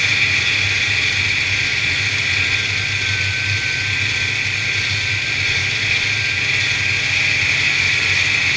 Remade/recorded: recorded